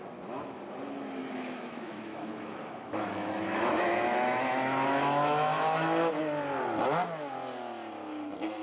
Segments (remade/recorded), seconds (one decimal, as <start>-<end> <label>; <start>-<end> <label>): 0.0-1.2 recorded; 1.2-6.2 remade; 6.2-8.6 recorded